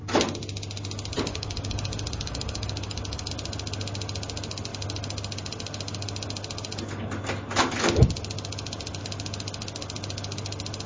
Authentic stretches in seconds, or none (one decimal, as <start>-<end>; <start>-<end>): 0.0-1.3; 3.3-10.9